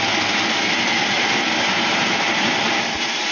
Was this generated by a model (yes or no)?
no